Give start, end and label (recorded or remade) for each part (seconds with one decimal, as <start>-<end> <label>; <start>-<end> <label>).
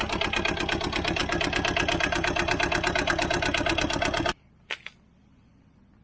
0.0-6.0 recorded